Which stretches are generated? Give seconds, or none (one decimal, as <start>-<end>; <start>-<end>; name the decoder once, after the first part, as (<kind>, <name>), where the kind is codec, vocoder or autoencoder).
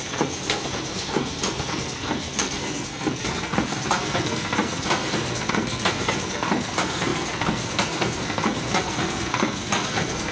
0.0-10.3 (codec, SNAC)